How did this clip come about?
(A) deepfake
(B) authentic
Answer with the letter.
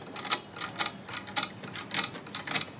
B